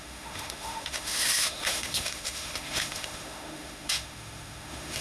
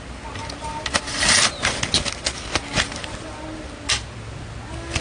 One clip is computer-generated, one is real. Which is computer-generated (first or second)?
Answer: first